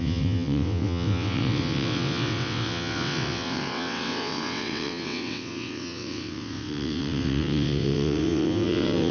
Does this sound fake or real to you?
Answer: fake